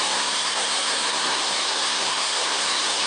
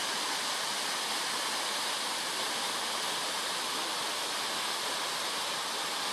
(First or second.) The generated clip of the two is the first